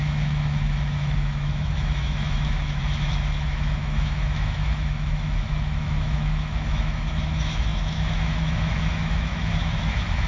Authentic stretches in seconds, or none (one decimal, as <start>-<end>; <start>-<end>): none